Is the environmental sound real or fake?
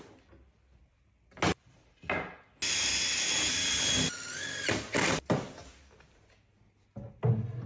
real